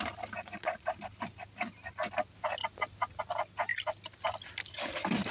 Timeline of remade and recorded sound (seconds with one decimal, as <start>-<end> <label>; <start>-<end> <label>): 0.0-0.4 recorded; 0.4-1.0 remade; 1.0-5.3 recorded